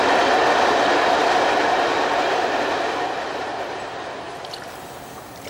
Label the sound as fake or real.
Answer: real